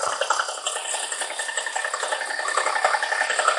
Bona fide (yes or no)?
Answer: yes